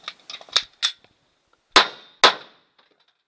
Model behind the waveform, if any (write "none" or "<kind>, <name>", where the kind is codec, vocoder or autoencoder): none